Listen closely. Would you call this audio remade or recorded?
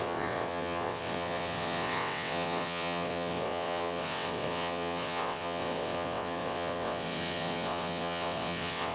remade